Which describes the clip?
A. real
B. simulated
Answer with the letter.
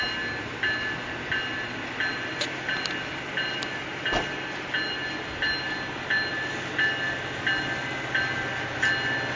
A